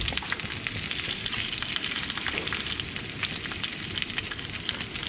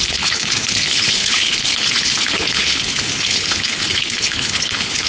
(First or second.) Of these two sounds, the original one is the first